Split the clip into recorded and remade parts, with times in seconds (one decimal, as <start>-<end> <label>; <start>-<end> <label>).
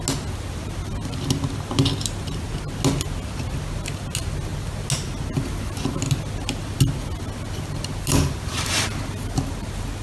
0.0-10.0 recorded